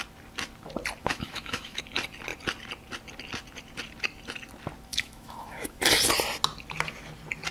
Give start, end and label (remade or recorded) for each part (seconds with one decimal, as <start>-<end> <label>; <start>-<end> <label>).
0.0-1.0 recorded; 1.0-1.8 remade; 1.8-4.9 recorded; 4.9-5.8 remade; 5.8-7.5 recorded